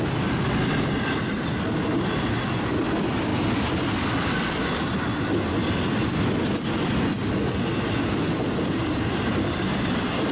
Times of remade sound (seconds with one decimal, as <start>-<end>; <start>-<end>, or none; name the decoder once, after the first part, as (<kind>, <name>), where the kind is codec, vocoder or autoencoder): none